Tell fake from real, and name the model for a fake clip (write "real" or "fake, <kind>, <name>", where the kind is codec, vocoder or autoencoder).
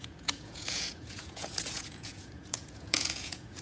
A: fake, vocoder, Vocos